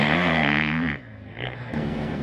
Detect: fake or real fake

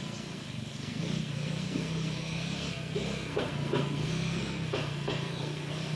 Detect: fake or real fake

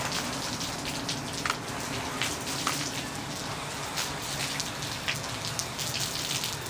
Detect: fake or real real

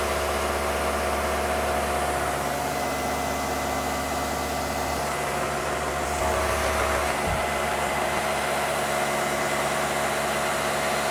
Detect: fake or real real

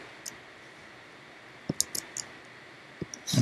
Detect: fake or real real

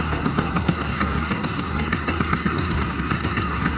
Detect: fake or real fake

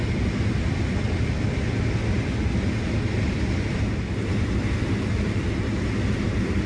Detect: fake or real real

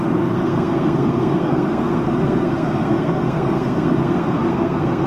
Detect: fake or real fake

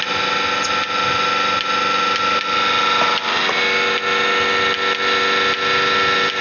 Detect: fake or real real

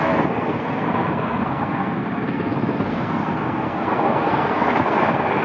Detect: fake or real fake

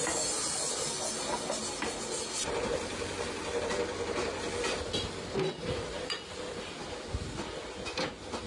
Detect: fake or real real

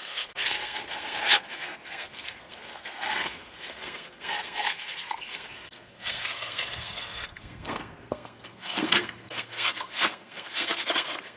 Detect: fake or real fake